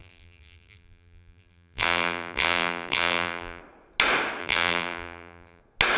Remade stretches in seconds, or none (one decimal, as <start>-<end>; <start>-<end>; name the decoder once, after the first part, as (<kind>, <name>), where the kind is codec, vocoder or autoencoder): 0.0-3.6 (vocoder, BigVGAN v2); 4.4-5.6